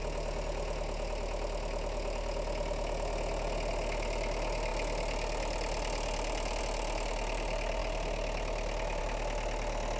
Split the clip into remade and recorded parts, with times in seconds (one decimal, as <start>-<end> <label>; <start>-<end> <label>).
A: 0.0-10.0 recorded